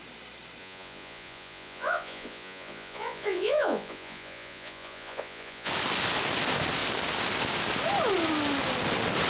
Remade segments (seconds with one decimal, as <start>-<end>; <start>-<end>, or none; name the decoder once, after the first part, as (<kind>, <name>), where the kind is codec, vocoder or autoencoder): 0.6-5.7 (vocoder, Vocos)